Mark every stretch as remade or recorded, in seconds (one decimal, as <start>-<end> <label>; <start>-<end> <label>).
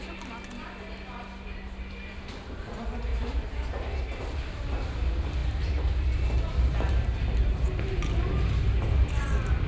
0.0-3.1 recorded; 3.1-4.0 remade; 4.0-5.4 recorded; 5.4-6.9 remade; 6.9-9.7 recorded